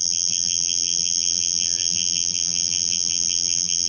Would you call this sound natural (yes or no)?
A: no